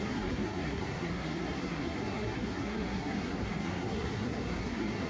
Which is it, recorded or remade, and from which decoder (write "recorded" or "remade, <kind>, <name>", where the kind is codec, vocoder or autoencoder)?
remade, codec, SNAC